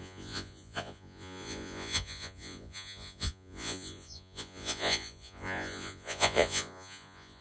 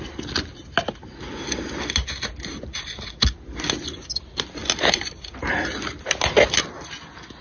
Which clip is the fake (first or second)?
first